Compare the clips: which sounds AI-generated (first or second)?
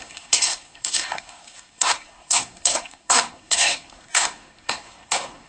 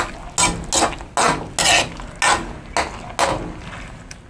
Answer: first